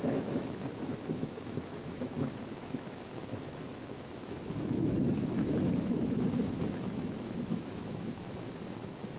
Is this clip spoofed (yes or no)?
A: yes